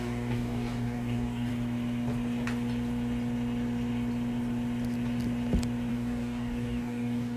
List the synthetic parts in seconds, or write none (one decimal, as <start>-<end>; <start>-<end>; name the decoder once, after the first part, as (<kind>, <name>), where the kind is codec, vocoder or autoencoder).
0.0-1.5 (codec, DAC); 5.9-7.4